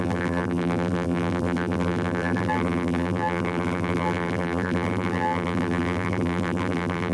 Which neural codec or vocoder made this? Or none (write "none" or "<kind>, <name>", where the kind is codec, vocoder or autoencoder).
vocoder, BigVGAN v2